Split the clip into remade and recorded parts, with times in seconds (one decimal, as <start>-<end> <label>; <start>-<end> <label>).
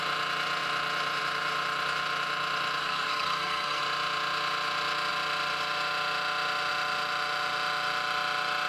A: 0.0-2.8 recorded; 2.8-3.8 remade; 3.8-8.7 recorded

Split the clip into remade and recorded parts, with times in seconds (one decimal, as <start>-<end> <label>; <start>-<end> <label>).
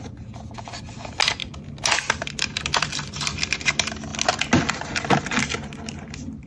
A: 0.0-1.4 recorded; 1.4-3.4 remade; 3.4-6.5 recorded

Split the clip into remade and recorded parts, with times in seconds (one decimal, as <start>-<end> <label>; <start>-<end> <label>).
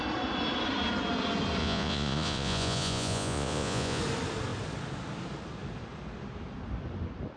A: 0.0-1.6 recorded; 1.6-4.0 remade; 4.0-7.4 recorded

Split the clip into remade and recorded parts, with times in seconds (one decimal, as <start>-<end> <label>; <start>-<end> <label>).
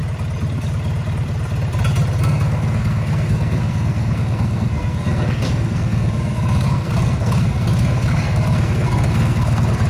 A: 0.0-2.2 recorded; 2.2-9.9 remade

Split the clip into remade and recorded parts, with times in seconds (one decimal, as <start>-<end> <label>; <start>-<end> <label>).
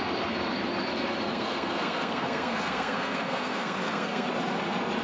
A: 0.0-1.3 recorded; 1.3-4.3 remade; 4.3-5.0 recorded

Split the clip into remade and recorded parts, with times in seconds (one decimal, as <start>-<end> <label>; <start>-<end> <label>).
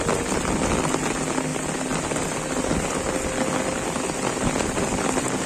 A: 0.0-5.5 recorded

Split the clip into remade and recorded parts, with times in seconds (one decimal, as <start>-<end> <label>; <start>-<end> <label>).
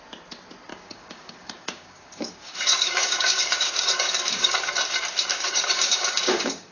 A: 0.0-0.7 recorded; 0.7-4.7 remade; 4.7-5.3 recorded; 5.3-6.7 remade